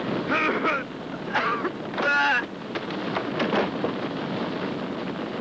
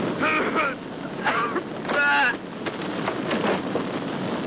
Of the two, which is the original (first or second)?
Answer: second